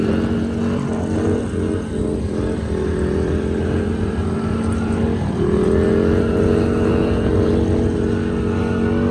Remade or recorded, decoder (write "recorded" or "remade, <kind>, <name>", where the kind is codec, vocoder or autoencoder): recorded